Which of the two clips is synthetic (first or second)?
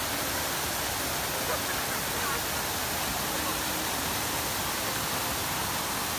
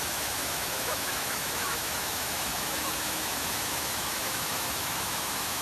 second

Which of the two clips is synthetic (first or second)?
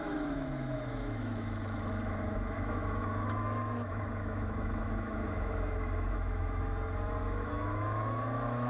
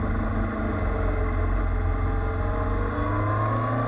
first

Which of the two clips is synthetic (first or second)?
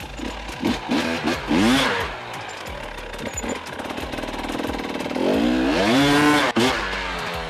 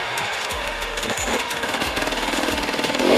second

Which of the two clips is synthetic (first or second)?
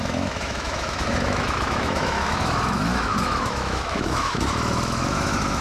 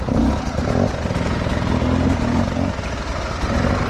first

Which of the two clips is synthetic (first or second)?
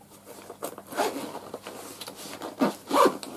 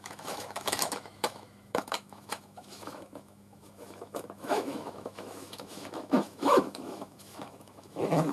second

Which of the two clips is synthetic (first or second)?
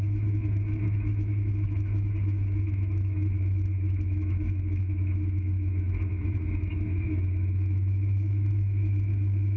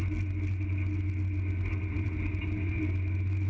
first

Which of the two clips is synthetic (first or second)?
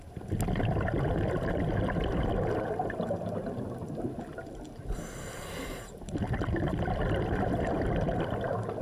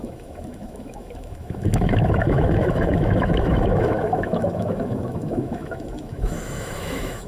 second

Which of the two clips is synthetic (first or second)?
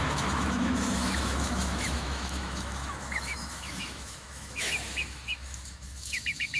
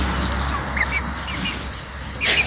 first